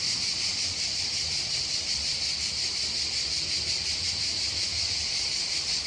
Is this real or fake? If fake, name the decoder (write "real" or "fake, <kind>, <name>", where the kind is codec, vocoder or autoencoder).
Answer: real